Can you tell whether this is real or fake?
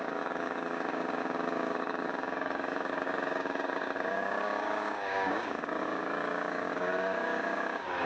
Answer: fake